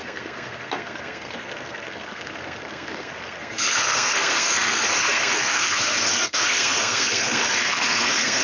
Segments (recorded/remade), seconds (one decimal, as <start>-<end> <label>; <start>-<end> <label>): 0.0-8.4 remade